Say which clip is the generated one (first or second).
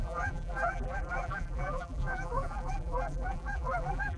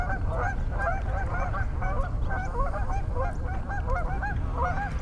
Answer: first